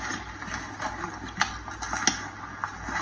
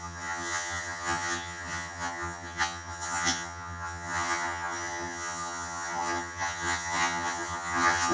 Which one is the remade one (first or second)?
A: second